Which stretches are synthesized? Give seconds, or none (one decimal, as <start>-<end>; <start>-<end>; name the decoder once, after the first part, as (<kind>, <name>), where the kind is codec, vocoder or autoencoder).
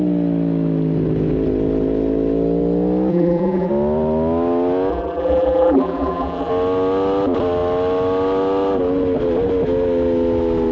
3.1-3.7 (vocoder, BigVGAN v2); 4.9-6.5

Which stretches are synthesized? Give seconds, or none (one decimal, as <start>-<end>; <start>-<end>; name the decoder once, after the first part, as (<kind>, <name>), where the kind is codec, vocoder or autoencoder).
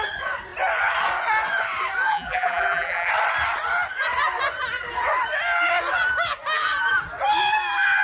2.1-3.1 (vocoder, BigVGAN v2)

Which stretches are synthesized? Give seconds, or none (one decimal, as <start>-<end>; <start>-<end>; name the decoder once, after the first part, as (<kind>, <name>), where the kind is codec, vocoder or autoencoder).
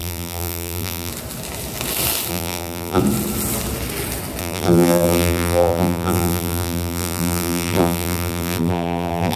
0.0-1.1 (vocoder, BigVGAN v2); 2.3-3.0; 4.4-9.4